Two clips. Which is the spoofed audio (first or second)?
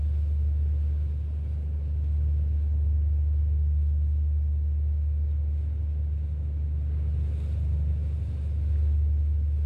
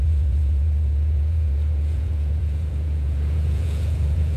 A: second